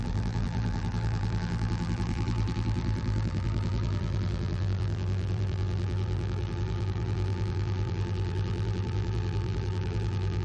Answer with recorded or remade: remade